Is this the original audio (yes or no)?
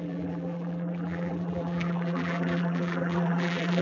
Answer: no